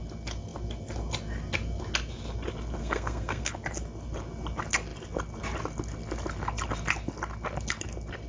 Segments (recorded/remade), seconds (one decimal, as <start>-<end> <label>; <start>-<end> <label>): 0.0-2.8 recorded; 2.8-3.5 remade; 3.5-8.3 recorded